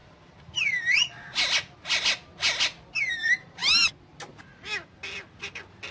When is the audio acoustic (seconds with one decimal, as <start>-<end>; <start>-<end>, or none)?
0.0-3.1; 3.6-5.9